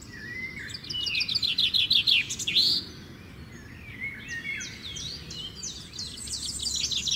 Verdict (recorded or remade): recorded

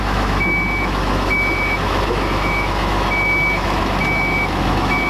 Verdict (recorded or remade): remade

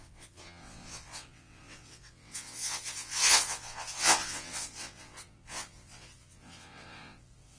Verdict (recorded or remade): remade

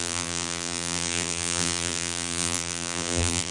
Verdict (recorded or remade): remade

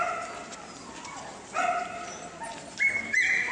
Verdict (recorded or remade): recorded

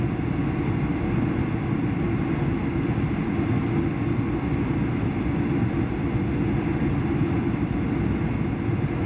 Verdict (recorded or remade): recorded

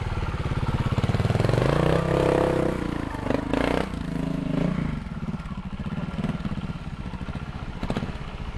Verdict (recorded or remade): recorded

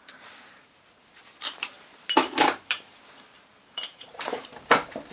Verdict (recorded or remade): remade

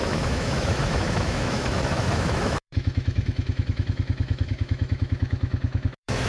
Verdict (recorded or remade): remade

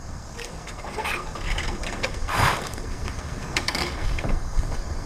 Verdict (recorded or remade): remade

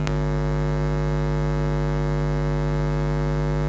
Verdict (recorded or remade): recorded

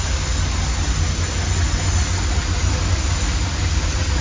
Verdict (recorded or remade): recorded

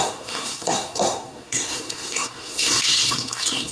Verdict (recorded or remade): remade